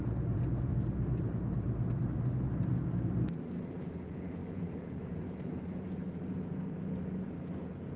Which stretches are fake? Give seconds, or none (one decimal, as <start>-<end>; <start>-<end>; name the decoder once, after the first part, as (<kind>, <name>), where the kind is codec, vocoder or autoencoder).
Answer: 0.0-0.7 (vocoder, Vocos); 3.7-8.0

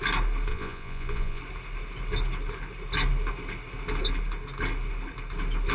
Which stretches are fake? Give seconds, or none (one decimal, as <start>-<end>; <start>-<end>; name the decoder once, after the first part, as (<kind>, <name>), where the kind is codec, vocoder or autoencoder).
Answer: 0.5-1.4 (vocoder, Vocos)

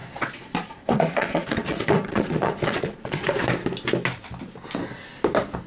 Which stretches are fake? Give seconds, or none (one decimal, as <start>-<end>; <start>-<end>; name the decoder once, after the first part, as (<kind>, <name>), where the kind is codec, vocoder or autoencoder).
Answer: 0.0-3.4 (vocoder, Vocos)